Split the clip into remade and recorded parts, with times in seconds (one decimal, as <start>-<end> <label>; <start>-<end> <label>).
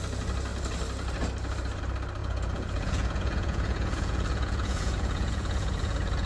0.0-2.2 recorded; 2.2-6.3 remade